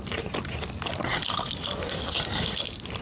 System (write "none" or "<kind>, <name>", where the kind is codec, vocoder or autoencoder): none